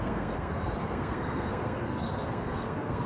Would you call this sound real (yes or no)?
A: no